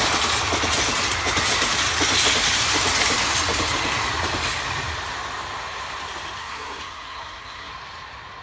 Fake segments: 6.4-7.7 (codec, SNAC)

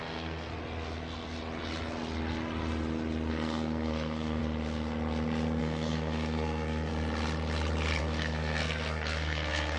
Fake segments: 0.0-0.5 (codec, SNAC); 3.3-4.4; 5.6-6.9; 8.0-9.8

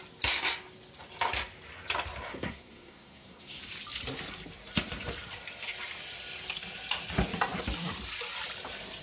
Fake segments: 2.3-3.6 (codec, SNAC)